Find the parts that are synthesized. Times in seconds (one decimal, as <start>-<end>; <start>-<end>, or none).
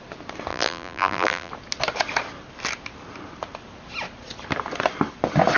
0.5-1.5